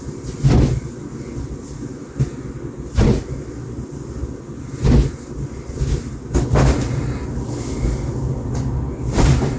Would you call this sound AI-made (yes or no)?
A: no